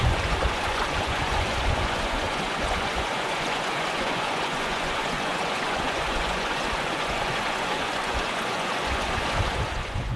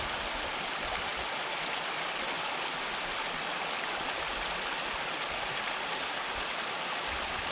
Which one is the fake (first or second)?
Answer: first